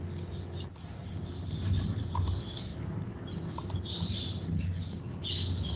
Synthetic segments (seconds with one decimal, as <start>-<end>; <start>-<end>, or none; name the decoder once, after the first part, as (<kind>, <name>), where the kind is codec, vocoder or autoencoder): 1.0-2.0 (vocoder, BigVGAN v2); 2.7-4.6